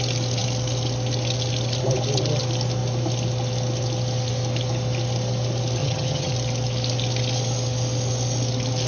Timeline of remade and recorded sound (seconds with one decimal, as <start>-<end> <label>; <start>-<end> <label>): 0.0-5.8 recorded; 5.8-6.3 remade; 6.3-8.9 recorded